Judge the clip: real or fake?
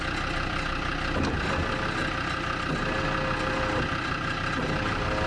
real